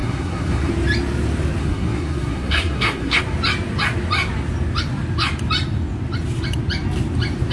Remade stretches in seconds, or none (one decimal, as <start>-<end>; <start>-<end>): 0.0-0.7; 1.6-3.2